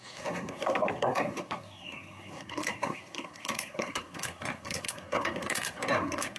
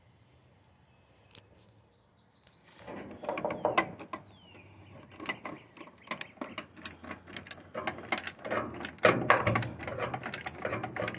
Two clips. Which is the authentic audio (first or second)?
second